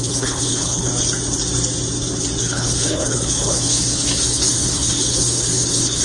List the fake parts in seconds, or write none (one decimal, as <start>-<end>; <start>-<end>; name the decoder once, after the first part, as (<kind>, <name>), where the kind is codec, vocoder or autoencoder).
0.0-0.9 (codec, HILCodec); 2.4-6.0